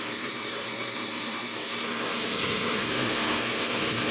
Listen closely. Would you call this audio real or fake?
fake